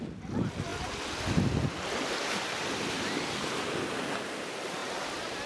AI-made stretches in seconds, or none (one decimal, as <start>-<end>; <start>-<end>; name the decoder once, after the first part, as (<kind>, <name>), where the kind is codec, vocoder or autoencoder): none